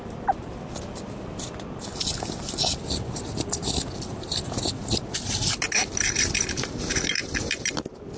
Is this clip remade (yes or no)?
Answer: no